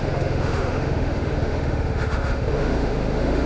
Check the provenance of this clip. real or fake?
fake